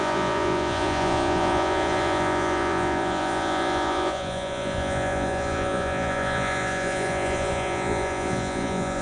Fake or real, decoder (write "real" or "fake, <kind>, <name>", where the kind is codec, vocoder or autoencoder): fake, vocoder, Vocos